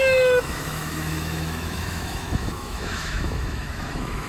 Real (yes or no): no